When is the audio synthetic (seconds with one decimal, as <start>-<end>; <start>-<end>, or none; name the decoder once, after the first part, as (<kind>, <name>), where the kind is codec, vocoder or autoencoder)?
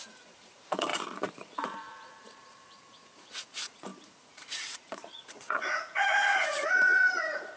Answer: 0.0-7.6 (vocoder, Vocos)